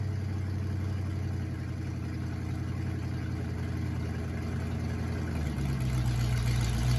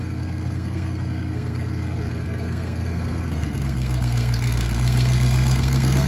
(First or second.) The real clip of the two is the first